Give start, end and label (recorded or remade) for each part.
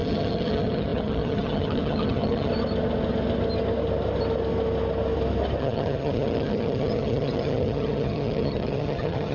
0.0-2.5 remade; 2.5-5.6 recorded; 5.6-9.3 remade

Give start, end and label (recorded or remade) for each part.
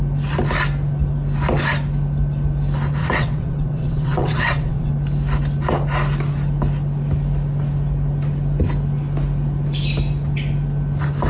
0.0-3.0 recorded; 3.0-4.9 remade; 4.9-11.3 recorded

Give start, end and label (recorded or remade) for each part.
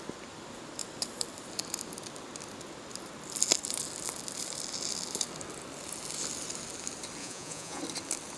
0.0-7.2 recorded; 7.2-7.8 remade; 7.8-8.4 recorded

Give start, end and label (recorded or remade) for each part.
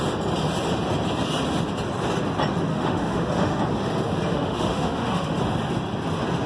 0.0-2.7 recorded; 2.7-3.6 remade; 3.6-4.3 recorded; 4.3-5.4 remade; 5.4-6.5 recorded